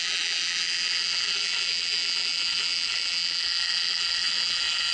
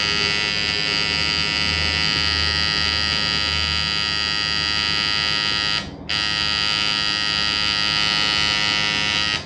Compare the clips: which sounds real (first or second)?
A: second